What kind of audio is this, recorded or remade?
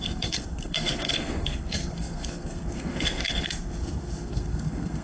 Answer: remade